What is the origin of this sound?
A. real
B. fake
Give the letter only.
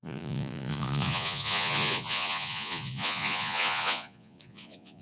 B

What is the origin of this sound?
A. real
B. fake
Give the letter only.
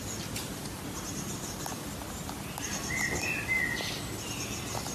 B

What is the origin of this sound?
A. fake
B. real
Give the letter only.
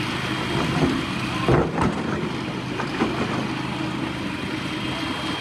B